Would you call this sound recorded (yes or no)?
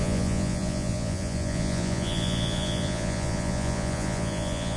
no